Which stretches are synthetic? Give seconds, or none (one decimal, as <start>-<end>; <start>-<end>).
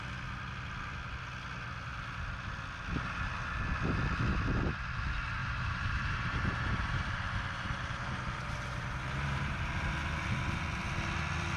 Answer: 5.4-9.7